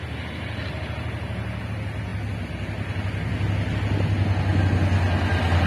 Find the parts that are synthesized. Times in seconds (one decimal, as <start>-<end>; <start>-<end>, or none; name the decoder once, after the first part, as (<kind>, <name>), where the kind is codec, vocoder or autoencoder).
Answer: none